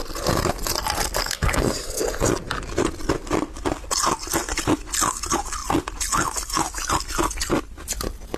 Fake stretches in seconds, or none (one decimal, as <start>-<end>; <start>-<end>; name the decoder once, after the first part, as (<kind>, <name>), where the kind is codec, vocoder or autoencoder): 1.2-2.0 (codec, SNAC)